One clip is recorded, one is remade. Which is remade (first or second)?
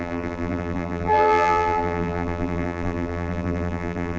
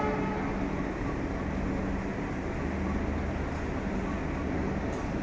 first